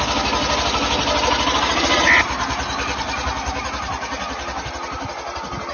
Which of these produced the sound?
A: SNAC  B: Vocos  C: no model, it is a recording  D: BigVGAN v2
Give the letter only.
C